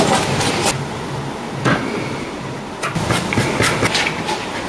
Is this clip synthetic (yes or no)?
no